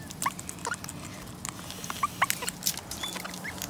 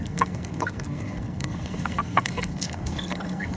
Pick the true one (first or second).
first